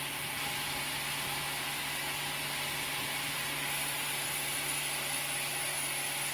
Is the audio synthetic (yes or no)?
no